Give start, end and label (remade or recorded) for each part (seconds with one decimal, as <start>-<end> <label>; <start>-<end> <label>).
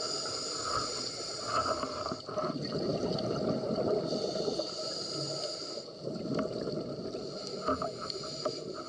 0.0-0.7 recorded; 0.7-1.5 remade; 1.5-8.9 recorded